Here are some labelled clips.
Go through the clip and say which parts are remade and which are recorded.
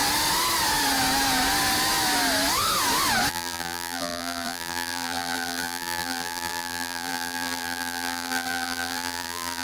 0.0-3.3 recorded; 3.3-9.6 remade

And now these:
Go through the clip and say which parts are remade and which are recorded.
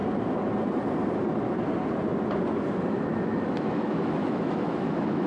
0.0-2.6 recorded; 2.6-5.3 remade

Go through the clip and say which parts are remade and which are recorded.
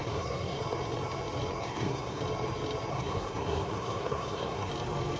0.0-0.6 remade; 0.6-1.6 recorded; 1.6-2.2 remade; 2.2-2.9 recorded; 2.9-4.7 remade; 4.7-5.2 recorded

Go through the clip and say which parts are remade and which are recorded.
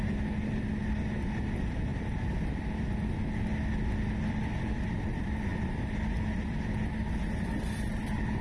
0.0-8.4 recorded